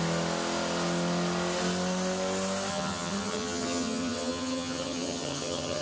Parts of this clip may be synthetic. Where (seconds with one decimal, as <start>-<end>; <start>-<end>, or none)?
2.7-5.8